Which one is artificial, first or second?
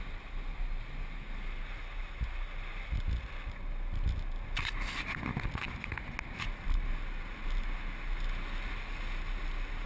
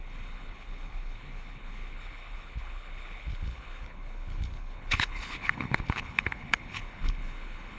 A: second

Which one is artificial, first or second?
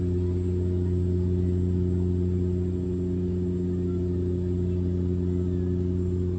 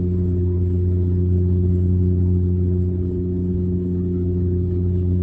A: second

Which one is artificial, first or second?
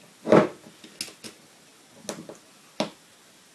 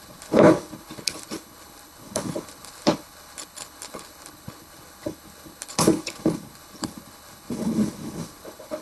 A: second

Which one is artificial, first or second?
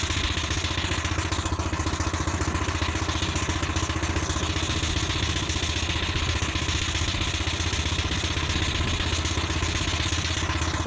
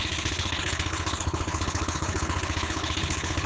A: second